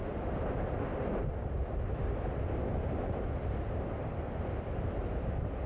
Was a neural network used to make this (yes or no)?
no